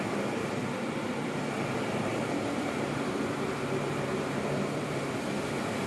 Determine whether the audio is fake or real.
fake